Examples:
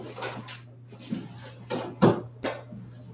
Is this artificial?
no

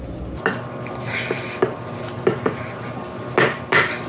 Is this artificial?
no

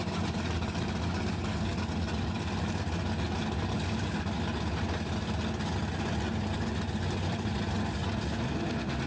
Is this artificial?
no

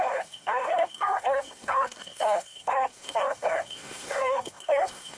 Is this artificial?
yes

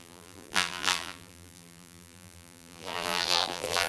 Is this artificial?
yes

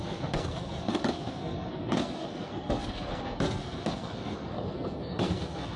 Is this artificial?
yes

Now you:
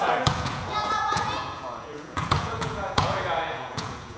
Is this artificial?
yes